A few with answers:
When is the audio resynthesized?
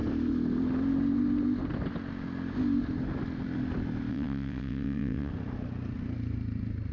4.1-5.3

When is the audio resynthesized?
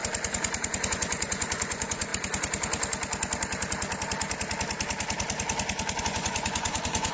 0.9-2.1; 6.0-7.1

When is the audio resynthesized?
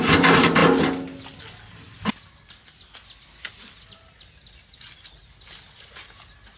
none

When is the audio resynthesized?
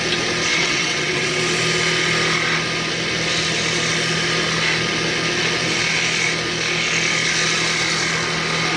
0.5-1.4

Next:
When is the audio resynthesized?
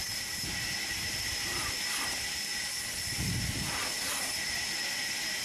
none